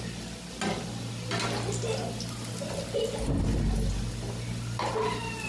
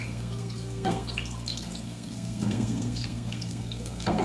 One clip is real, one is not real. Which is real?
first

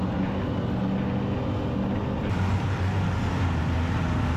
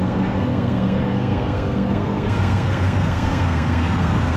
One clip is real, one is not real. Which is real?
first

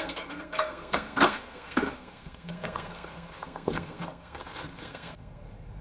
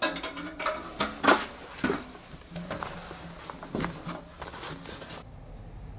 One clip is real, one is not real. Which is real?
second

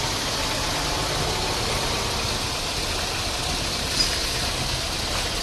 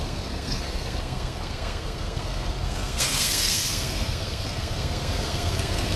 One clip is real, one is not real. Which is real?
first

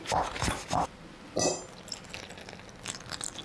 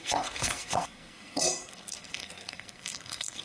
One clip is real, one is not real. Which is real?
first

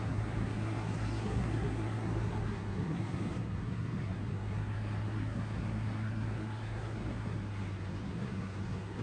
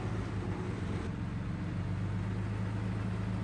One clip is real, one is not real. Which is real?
second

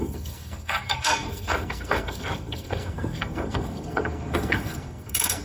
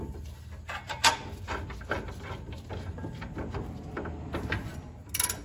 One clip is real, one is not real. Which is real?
second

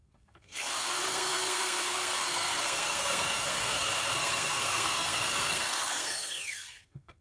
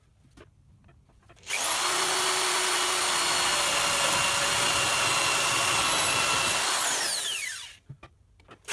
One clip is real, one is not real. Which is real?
second